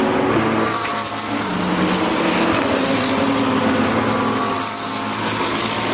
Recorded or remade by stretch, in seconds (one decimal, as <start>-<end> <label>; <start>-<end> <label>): 0.0-5.9 recorded